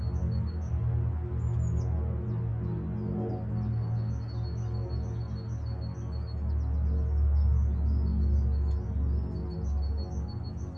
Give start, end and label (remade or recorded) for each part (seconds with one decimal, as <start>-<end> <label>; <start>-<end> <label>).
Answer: 0.0-10.8 recorded